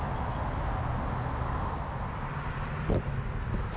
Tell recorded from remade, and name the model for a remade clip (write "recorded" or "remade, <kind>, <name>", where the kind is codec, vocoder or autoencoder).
recorded